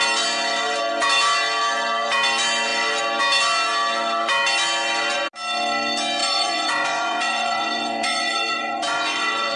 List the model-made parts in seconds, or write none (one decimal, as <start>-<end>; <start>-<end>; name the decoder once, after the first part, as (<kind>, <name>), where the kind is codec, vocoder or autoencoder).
6.2-9.6 (vocoder, Vocos)